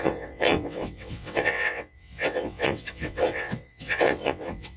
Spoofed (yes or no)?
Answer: yes